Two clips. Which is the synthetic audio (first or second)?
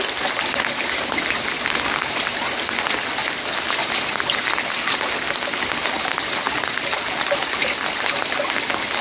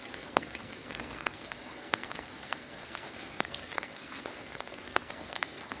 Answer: second